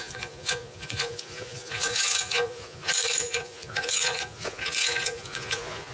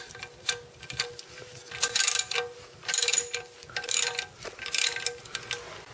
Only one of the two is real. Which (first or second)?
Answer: second